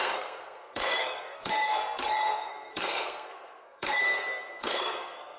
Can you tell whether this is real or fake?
fake